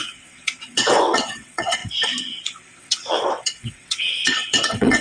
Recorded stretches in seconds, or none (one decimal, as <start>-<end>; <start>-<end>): 1.8-2.8